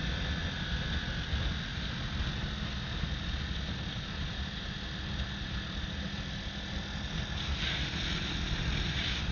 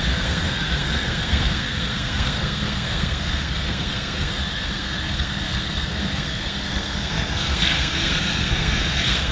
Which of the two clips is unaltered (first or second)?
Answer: first